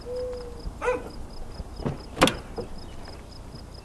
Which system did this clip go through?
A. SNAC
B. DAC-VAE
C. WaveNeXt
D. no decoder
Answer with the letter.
D